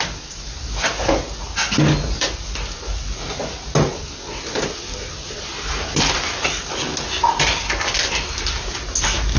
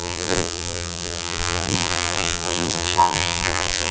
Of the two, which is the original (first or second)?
first